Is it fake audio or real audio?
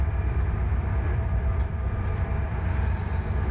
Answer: fake